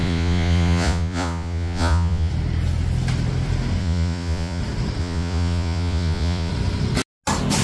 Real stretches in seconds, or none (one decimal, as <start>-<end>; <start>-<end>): 2.3-3.8; 4.6-5.0; 6.5-7.6